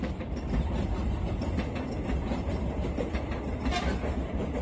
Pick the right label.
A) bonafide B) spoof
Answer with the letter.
A